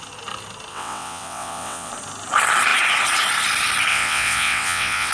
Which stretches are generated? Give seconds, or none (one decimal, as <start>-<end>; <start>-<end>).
0.7-1.9; 3.9-5.1